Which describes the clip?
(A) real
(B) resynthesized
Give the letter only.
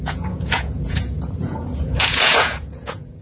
B